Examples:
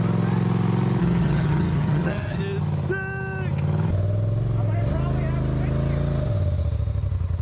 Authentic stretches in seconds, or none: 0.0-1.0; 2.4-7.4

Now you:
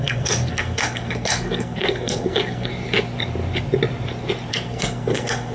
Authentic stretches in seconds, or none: 2.7-4.5

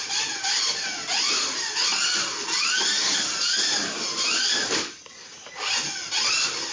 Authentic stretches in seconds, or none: 0.0-6.7

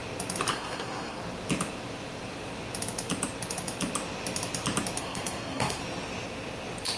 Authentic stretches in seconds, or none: 0.0-0.5; 1.2-5.0; 5.8-7.0

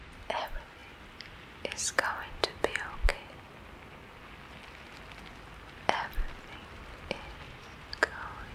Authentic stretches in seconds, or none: 0.0-8.5

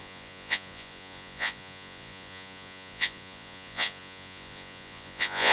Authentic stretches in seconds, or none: none

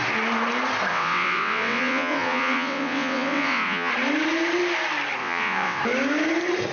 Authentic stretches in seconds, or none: 0.0-0.9; 3.9-5.2; 5.8-6.7